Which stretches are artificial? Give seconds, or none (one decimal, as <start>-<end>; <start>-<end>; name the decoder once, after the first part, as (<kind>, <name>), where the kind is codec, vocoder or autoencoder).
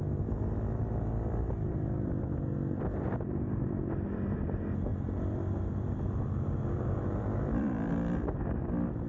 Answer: 4.9-7.9 (vocoder, BigVGAN v2)